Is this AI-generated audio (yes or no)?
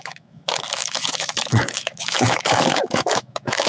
yes